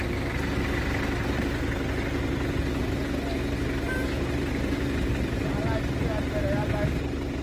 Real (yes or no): yes